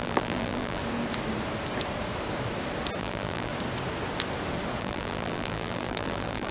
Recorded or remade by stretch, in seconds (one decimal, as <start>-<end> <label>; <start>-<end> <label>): 0.0-0.8 remade; 0.8-3.0 recorded; 3.0-3.5 remade; 3.5-4.8 recorded; 4.8-6.5 remade